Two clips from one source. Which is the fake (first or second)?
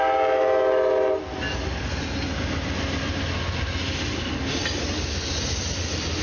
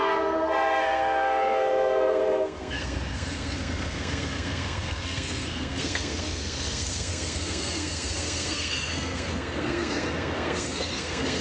second